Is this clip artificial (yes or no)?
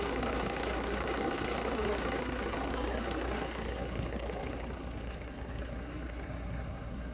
yes